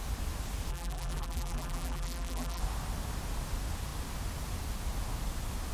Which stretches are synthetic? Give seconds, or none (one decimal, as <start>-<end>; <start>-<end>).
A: 0.7-2.6